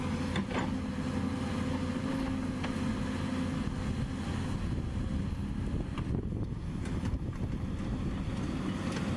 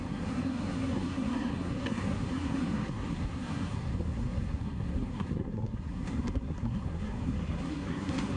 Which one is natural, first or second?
first